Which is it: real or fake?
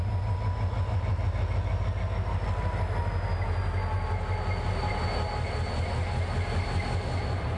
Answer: real